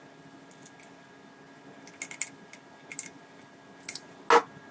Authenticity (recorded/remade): recorded